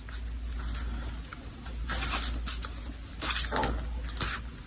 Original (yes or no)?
yes